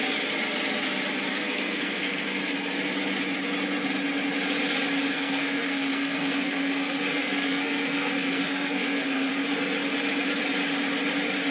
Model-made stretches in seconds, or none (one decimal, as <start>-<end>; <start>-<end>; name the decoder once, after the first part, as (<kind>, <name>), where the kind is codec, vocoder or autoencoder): 1.3-2.4 (codec, SNAC); 5.1-9.3